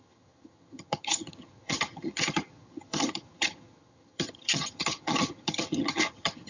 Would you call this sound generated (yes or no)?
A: yes